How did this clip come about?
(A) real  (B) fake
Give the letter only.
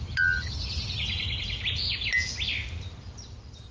A